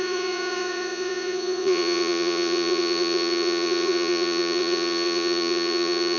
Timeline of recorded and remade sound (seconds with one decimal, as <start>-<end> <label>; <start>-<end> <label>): 0.0-6.2 remade